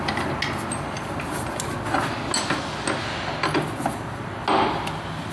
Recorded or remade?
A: recorded